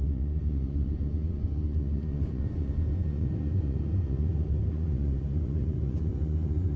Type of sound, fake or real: fake